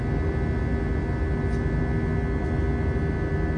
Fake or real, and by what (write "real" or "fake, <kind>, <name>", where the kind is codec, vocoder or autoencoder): real